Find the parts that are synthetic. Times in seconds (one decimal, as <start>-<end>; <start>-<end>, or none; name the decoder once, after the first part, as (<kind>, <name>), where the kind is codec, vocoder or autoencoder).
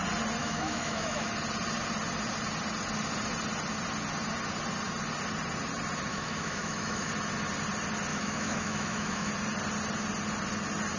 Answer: 0.4-1.3 (autoencoder, DAC-VAE); 6.1-7.1; 8.1-9.3